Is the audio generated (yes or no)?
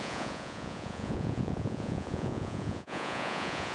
yes